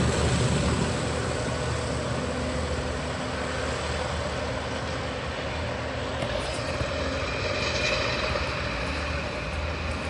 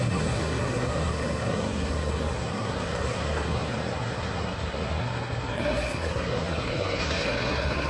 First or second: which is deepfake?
second